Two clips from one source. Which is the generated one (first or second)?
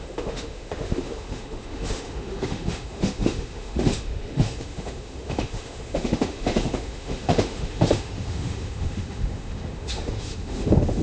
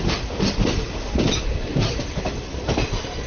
first